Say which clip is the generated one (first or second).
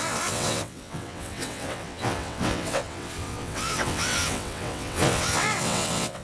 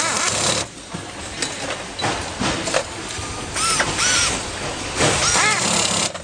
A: first